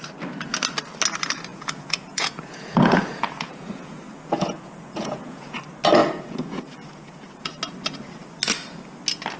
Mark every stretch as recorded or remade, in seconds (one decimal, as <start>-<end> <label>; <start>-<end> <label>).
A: 0.0-1.5 recorded; 1.5-5.6 remade; 5.6-6.0 recorded; 6.0-7.6 remade; 7.6-9.4 recorded